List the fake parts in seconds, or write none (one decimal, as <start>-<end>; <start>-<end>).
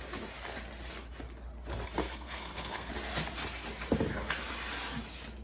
2.0-2.9